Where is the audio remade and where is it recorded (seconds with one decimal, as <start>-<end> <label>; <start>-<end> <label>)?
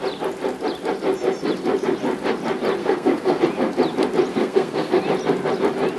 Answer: 0.0-2.8 recorded; 2.8-3.4 remade; 3.4-4.3 recorded; 4.3-5.0 remade; 5.0-6.0 recorded